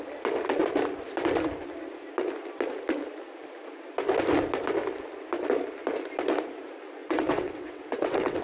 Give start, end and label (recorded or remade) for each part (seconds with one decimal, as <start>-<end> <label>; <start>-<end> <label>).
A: 0.0-7.0 recorded; 7.0-8.4 remade